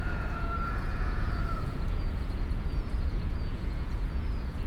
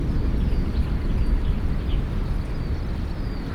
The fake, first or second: first